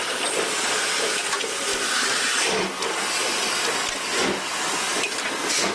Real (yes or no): yes